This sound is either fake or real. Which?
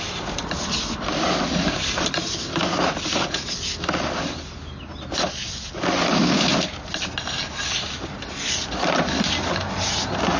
real